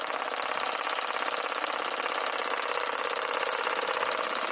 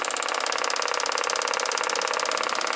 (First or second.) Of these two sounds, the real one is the second